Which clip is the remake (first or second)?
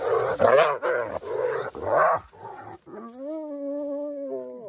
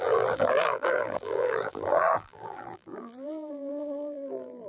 second